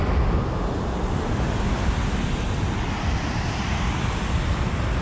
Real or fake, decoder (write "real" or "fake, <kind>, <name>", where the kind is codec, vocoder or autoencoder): real